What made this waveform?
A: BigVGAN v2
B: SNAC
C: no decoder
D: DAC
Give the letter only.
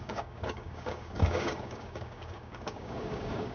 D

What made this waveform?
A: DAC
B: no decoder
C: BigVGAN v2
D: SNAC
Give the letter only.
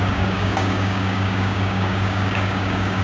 A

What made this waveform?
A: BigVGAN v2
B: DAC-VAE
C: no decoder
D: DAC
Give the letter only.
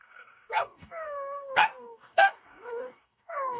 D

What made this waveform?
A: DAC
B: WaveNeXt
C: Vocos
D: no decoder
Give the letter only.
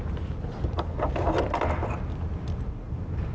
D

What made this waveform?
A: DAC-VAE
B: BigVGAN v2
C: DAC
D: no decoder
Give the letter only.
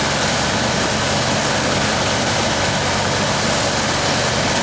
D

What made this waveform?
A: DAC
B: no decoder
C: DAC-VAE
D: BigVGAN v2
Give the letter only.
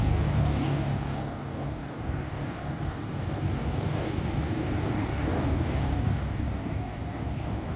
A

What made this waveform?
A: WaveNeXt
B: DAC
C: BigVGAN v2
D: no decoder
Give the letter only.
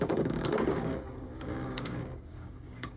B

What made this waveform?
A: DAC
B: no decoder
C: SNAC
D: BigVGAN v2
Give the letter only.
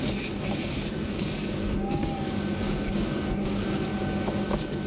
A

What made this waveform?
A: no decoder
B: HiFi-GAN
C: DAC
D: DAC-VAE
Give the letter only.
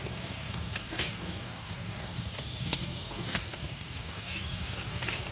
C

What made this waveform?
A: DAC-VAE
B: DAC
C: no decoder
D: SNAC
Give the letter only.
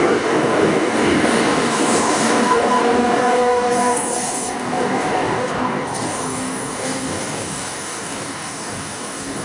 B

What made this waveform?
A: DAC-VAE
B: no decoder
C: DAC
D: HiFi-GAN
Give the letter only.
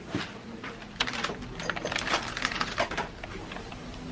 B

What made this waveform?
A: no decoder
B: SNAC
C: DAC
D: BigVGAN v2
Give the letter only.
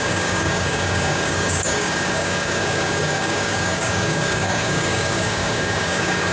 C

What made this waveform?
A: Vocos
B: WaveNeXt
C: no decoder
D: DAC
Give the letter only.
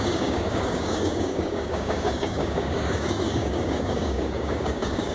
D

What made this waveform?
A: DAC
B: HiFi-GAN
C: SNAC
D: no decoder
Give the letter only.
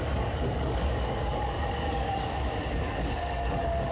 A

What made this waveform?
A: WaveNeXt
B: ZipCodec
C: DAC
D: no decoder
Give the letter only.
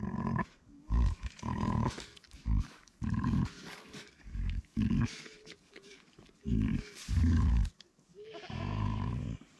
C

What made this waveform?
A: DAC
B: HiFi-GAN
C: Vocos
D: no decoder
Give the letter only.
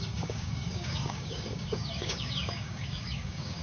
A